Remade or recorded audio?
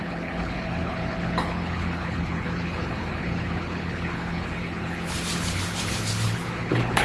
remade